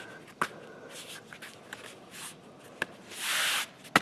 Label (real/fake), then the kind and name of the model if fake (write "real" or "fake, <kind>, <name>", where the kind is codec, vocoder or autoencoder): real